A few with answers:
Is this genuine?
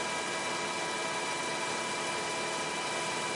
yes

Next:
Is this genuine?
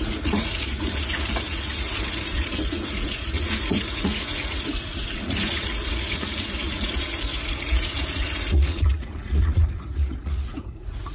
no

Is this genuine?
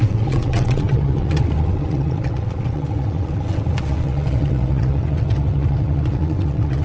no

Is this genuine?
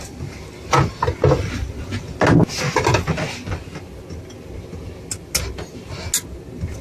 yes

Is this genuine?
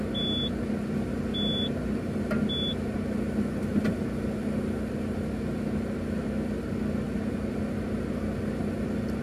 yes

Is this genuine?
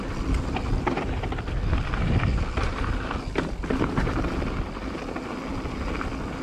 yes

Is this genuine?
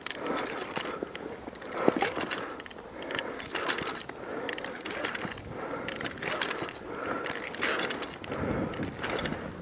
yes